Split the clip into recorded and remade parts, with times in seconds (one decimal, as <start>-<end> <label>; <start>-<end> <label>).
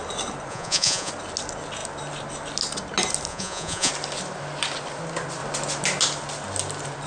0.0-0.5 recorded; 0.5-1.1 remade; 1.1-3.3 recorded; 3.3-3.9 remade; 3.9-7.1 recorded